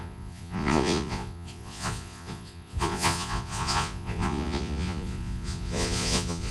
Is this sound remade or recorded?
remade